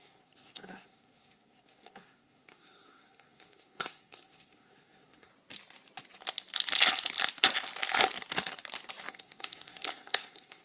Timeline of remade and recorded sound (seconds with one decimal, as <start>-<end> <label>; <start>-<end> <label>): 0.0-5.3 remade; 5.3-9.1 recorded; 9.1-10.6 remade